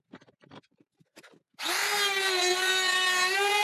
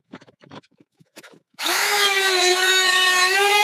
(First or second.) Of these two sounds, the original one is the first